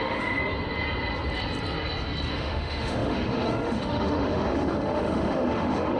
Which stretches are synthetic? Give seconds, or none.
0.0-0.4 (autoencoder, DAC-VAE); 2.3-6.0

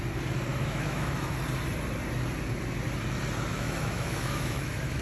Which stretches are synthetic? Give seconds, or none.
0.5-1.3 (autoencoder, DAC-VAE); 3.5-5.0